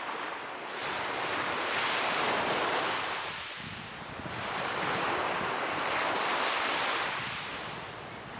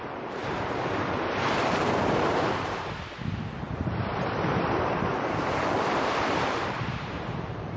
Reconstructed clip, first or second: second